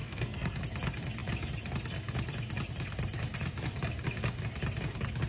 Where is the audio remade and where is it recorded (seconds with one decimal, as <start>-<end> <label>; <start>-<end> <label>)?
0.0-0.6 remade; 0.6-5.3 recorded